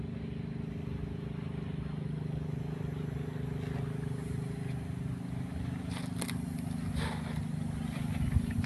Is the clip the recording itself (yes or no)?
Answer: yes